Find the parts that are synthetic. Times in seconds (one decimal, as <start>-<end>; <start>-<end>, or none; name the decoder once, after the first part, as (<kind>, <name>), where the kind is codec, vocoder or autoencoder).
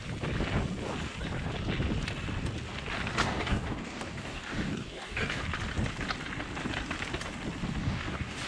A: 3.2-5.4 (codec, DAC); 7.8-8.5